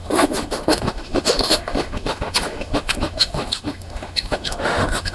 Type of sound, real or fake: fake